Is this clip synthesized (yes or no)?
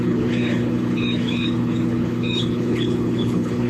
yes